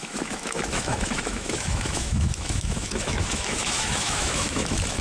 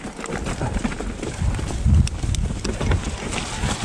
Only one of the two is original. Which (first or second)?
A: second